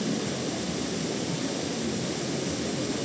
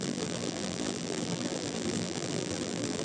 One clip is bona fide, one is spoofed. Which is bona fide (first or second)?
first